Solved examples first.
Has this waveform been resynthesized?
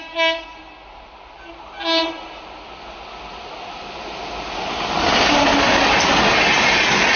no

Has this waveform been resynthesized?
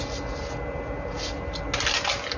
no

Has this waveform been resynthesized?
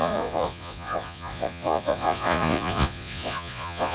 yes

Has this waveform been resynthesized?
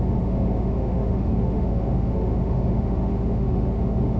yes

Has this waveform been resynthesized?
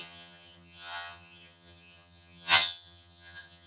yes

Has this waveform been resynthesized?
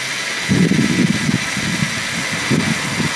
no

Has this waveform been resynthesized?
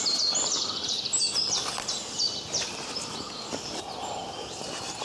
no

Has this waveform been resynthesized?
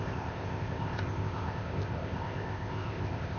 yes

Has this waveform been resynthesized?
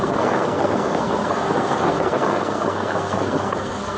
yes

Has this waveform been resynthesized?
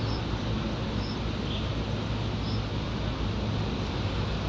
no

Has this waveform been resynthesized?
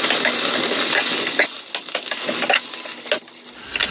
no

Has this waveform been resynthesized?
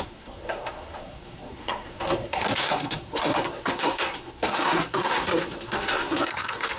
yes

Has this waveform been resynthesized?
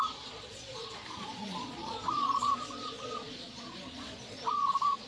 yes